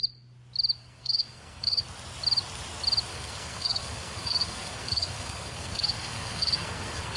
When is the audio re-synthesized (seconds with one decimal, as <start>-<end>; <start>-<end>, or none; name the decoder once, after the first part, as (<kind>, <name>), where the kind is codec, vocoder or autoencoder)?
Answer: 0.8-1.8 (codec, SNAC); 3.1-7.2